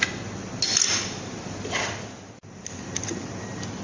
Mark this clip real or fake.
real